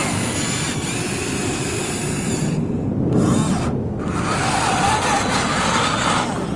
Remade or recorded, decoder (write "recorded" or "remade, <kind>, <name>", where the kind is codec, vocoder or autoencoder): recorded